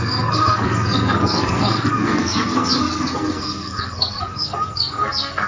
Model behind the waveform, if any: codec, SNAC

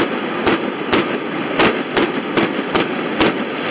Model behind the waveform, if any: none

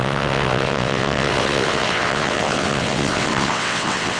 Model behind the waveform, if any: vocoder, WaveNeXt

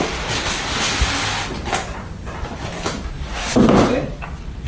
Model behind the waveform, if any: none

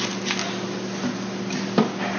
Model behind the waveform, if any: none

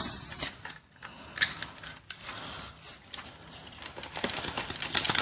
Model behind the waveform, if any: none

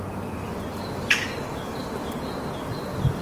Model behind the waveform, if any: vocoder, BigVGAN v2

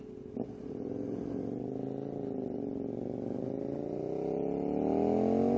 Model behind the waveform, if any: none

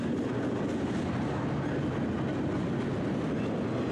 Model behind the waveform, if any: none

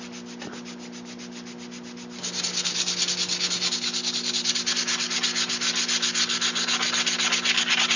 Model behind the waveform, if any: none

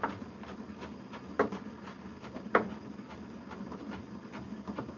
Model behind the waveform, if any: none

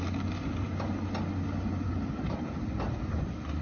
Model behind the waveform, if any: none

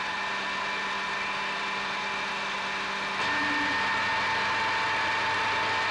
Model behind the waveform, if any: none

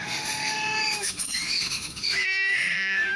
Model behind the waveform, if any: autoencoder, DAC-VAE